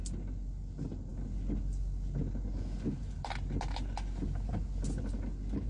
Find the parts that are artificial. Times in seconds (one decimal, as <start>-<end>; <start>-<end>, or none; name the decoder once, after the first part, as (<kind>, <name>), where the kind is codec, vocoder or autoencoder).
none